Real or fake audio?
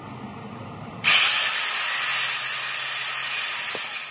real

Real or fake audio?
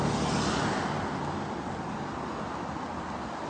real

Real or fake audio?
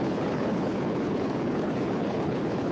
fake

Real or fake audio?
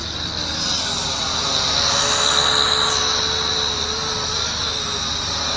real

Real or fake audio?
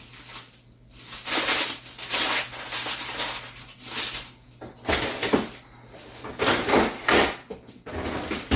real